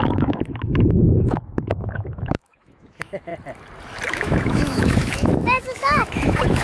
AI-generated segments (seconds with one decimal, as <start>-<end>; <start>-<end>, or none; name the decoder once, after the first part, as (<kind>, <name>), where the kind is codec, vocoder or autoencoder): 0.0-3.3 (autoencoder, DAC-VAE); 4.1-6.6

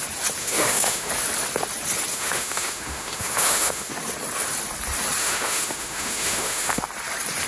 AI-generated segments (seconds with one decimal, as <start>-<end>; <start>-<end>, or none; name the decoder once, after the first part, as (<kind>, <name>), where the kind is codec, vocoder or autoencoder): 0.4-1.1 (autoencoder, DAC-VAE); 2.1-3.9; 5.2-6.8

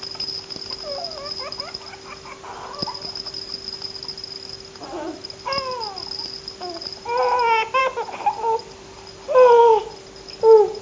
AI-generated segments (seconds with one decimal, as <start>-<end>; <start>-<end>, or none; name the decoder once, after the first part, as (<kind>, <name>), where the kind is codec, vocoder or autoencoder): none

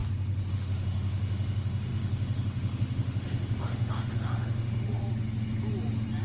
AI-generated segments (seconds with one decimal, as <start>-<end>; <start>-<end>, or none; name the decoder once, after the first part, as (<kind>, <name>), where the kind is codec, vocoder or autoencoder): 0.5-5.0 (autoencoder, DAC-VAE)

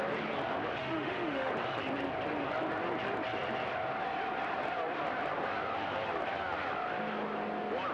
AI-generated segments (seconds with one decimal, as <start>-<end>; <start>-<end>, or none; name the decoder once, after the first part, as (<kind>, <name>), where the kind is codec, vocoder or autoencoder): 0.8-1.5 (autoencoder, DAC-VAE)

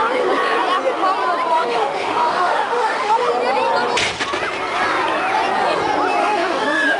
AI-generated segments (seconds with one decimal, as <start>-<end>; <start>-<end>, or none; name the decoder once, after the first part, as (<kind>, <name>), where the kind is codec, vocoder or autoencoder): 1.5-3.3 (autoencoder, DAC-VAE); 6.2-7.0

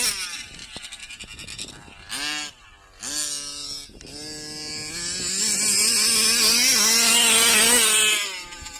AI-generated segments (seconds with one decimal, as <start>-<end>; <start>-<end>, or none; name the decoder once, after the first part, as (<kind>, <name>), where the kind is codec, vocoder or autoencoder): none

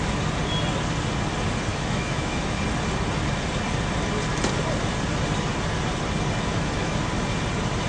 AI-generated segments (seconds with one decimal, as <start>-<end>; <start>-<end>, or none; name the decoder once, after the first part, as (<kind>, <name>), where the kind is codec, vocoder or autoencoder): 1.7-2.6 (autoencoder, DAC-VAE); 6.5-7.0